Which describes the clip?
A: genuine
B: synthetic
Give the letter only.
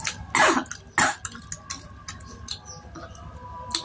A